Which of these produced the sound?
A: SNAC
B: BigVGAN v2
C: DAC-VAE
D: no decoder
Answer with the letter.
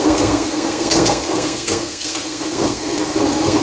A